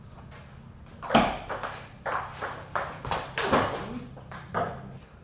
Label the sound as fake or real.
real